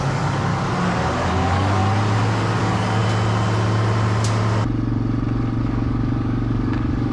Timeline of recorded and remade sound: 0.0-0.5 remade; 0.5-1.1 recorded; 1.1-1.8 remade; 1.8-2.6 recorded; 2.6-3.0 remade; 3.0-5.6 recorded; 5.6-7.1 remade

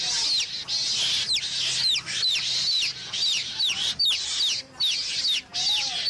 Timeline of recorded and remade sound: 0.0-1.8 recorded; 1.8-4.2 remade; 4.2-6.1 recorded

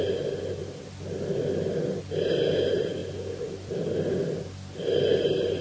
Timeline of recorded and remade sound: 0.0-5.6 recorded

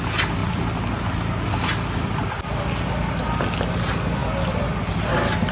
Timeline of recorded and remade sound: 0.0-5.5 recorded